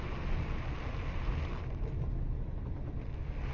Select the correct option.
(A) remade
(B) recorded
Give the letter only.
B